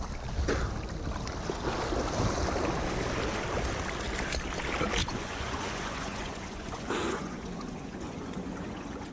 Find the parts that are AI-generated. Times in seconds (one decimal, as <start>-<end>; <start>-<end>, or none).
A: 5.0-9.1